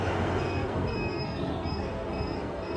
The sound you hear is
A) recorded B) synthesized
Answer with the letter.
B